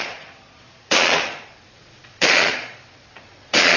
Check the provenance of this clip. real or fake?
fake